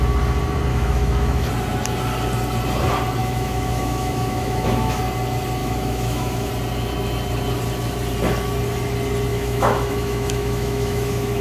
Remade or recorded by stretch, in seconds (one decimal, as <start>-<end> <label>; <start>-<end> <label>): 0.0-0.7 recorded; 0.7-1.5 remade; 1.5-3.2 recorded; 3.2-5.0 remade; 5.0-5.6 recorded; 5.6-6.5 remade; 6.5-9.3 recorded; 9.3-11.4 remade